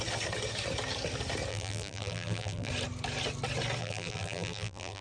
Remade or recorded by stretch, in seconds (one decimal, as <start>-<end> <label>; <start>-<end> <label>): 0.0-1.5 recorded; 1.5-2.7 remade; 2.7-3.8 recorded; 3.8-5.0 remade